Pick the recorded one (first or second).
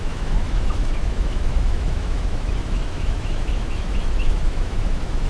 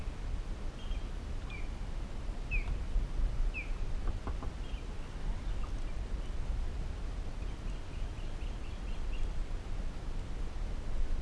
second